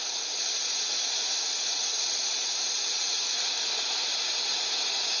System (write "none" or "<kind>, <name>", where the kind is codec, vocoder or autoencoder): vocoder, Vocos